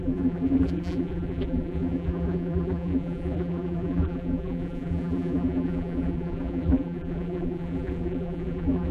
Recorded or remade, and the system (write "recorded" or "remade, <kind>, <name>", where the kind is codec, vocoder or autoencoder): remade, vocoder, BigVGAN v2